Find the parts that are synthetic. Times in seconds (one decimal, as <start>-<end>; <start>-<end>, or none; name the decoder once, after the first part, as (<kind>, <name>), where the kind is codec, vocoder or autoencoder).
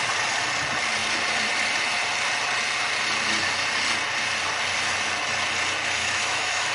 6.0-6.7 (autoencoder, DAC-VAE)